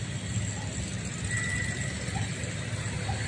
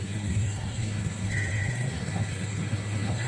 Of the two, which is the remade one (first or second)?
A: second